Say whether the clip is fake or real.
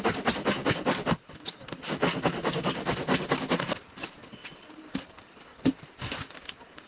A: real